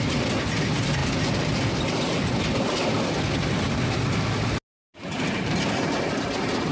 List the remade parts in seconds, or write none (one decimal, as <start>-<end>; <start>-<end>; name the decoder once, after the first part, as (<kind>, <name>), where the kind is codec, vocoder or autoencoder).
none